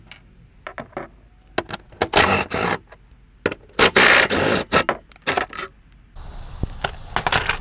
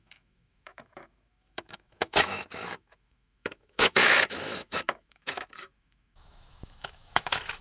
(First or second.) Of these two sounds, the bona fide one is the first